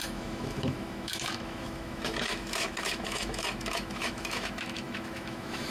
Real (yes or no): no